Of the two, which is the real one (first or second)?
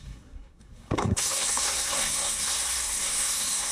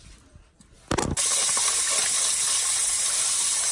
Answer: second